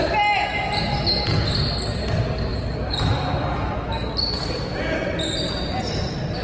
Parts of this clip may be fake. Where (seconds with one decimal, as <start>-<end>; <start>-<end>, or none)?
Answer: 2.5-3.4